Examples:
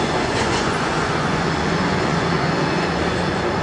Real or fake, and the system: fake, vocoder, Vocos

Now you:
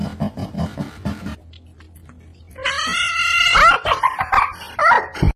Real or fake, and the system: real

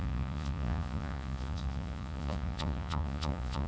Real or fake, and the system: fake, vocoder, Vocos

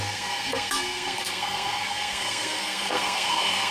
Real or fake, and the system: fake, codec, SNAC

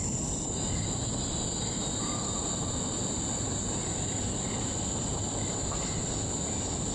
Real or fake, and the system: real